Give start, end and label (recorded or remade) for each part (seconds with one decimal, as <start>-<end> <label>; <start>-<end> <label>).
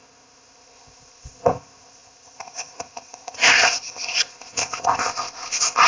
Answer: 0.0-5.9 remade